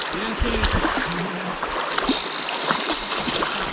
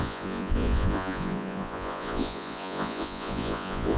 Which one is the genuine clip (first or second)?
first